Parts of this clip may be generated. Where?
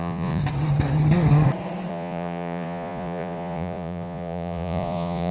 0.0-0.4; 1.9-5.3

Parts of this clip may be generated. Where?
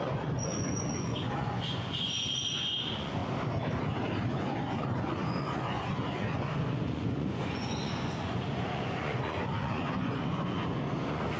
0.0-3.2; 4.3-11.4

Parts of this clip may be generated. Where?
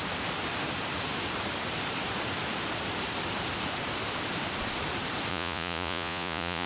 5.3-6.7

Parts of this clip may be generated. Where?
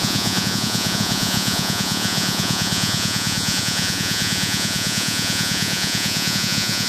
0.0-6.9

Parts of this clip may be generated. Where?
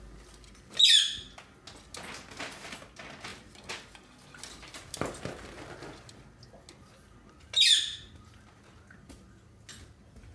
none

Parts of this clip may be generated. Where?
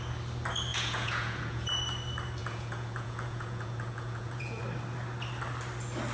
0.7-1.7; 2.4-4.6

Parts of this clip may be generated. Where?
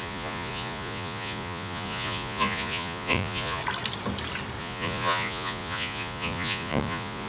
0.0-3.6; 4.6-7.3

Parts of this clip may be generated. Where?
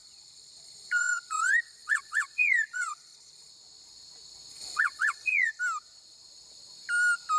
0.0-3.5; 4.5-5.5